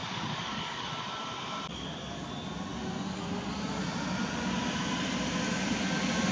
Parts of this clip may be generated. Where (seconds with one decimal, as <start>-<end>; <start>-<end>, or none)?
0.0-0.9; 1.7-2.3